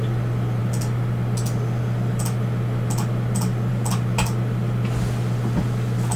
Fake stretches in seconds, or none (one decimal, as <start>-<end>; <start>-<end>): none